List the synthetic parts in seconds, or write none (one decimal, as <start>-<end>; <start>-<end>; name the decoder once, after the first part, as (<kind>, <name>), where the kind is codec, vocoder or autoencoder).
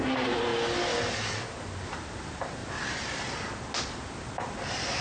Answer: 0.0-0.5 (vocoder, BigVGAN v2); 1.8-2.6; 4.4-5.0